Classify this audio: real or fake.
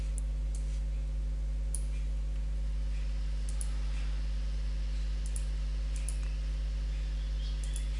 real